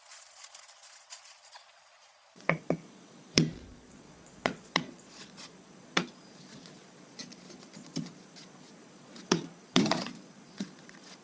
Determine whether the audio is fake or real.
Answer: fake